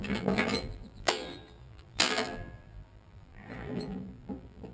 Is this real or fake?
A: fake